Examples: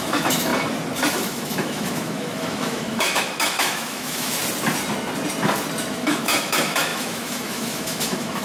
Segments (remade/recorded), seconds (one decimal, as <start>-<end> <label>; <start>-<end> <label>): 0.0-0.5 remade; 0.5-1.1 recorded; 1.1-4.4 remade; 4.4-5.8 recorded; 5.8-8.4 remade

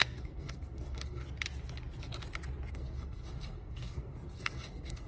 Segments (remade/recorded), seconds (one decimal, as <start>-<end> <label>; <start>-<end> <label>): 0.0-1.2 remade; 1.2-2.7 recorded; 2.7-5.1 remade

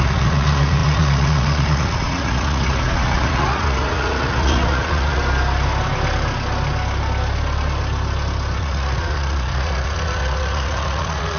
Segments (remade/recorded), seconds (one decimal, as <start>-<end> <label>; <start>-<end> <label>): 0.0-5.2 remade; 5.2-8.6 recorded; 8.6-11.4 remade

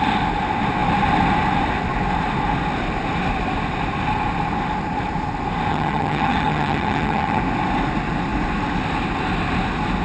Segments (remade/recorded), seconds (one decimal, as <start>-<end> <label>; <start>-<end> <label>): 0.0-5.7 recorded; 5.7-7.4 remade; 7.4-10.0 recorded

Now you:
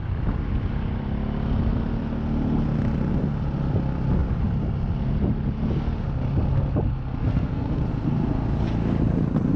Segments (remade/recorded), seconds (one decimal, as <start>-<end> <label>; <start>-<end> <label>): 0.0-7.2 recorded; 7.2-7.8 remade; 7.8-9.6 recorded

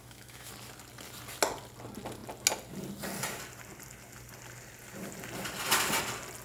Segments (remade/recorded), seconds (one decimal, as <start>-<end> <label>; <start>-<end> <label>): 0.0-0.5 remade; 0.5-6.4 recorded

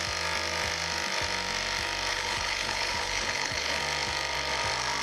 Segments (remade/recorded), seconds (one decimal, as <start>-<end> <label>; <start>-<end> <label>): 0.0-2.1 recorded; 2.1-3.8 remade; 3.8-5.0 recorded